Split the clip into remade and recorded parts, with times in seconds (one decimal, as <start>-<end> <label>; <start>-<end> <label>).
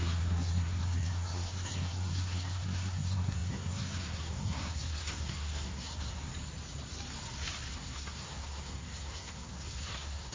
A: 0.0-6.3 remade; 6.3-7.7 recorded; 7.7-10.3 remade